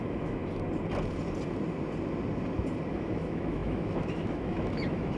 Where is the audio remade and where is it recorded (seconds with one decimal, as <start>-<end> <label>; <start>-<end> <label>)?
0.0-0.4 remade; 0.4-2.9 recorded; 2.9-5.2 remade